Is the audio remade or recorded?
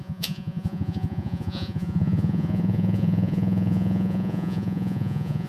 remade